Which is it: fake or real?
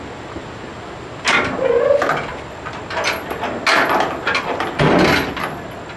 real